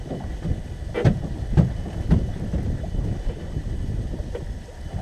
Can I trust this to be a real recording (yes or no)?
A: yes